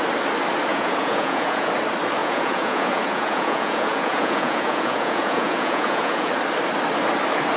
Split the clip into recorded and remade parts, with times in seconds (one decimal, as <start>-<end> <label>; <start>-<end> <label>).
0.0-0.7 recorded; 0.7-1.7 remade; 1.7-2.2 recorded; 2.2-6.3 remade; 6.3-7.6 recorded